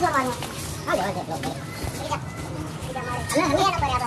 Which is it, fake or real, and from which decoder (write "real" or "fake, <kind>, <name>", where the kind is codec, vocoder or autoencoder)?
real